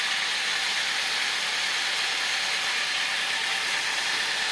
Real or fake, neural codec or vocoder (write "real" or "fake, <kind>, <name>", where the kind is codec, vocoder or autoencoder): real